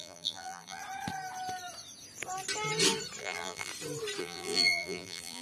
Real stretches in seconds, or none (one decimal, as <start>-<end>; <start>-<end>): 0.8-3.2; 3.7-4.2